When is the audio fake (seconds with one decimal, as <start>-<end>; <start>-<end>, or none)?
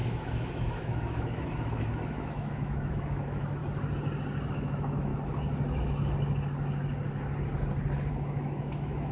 0.0-3.6; 4.5-5.1; 8.1-9.1